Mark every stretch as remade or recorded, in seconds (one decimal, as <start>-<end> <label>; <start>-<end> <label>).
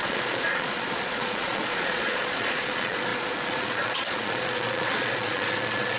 0.0-6.0 remade